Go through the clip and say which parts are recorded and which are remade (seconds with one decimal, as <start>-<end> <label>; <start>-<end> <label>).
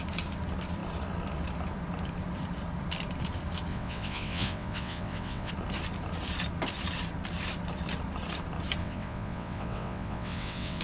0.0-3.7 recorded; 3.7-5.5 remade; 5.5-8.8 recorded; 8.8-10.8 remade